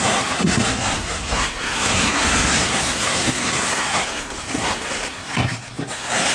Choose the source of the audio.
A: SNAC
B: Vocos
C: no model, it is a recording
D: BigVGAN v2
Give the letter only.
A